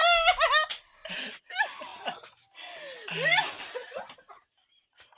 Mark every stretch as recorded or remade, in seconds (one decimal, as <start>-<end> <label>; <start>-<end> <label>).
0.0-5.2 recorded